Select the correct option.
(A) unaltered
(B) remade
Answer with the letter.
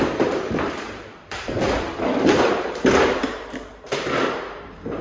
B